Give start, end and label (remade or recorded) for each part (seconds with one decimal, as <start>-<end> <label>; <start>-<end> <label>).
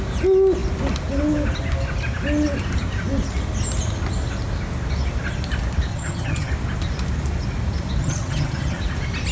0.0-5.9 recorded; 5.9-6.5 remade; 6.5-8.0 recorded; 8.0-8.8 remade; 8.8-9.3 recorded